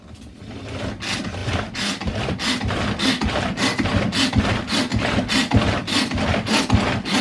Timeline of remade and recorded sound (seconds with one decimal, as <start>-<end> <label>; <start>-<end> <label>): 0.0-1.4 recorded; 1.4-2.3 remade; 2.3-4.9 recorded; 4.9-5.6 remade; 5.6-7.2 recorded